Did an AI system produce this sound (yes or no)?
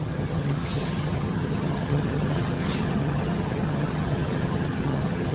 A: yes